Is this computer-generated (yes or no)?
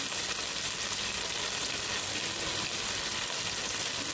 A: no